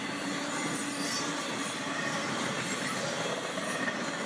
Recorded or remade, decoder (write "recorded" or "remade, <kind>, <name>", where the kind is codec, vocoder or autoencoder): recorded